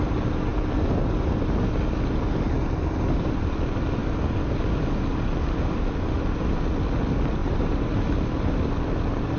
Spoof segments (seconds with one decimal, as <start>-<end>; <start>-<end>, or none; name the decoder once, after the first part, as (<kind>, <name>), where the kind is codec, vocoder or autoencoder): 7.4-8.6 (vocoder, BigVGAN v2)